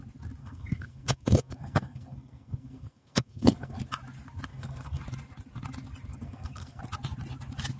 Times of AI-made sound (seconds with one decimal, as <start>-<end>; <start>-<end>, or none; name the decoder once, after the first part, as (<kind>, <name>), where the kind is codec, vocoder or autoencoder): 0.4-3.8 (codec, SNAC); 4.5-5.0; 6.1-6.8